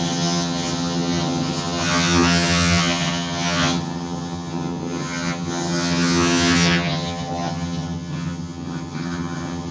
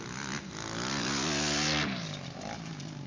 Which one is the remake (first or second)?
first